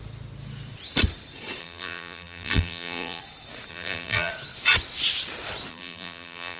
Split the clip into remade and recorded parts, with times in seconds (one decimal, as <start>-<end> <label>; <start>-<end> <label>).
0.0-1.6 recorded; 1.6-3.2 remade; 3.2-3.7 recorded; 3.7-4.3 remade; 4.3-5.7 recorded; 5.7-6.6 remade